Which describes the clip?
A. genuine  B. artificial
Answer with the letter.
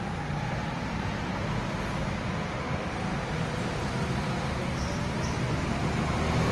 A